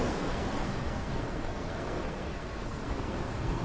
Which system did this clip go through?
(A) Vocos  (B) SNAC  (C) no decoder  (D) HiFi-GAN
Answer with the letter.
B